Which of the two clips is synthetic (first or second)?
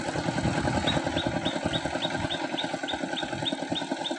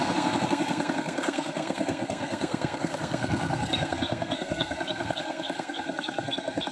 second